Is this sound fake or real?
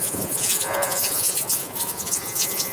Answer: fake